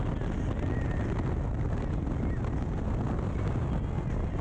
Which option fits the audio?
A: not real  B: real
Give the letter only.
B